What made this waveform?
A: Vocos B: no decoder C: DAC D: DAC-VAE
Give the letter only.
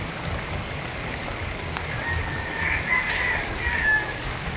C